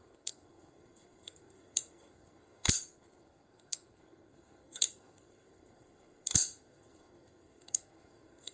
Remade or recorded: remade